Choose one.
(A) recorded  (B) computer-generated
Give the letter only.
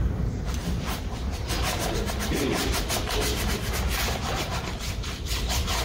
B